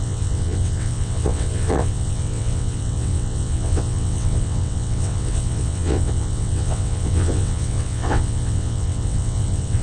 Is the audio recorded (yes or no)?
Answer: no